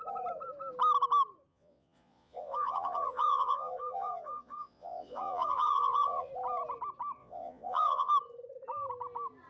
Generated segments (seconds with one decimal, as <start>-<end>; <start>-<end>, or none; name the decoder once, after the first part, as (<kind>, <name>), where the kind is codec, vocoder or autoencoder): 1.5-6.3 (vocoder, Vocos); 7.2-8.1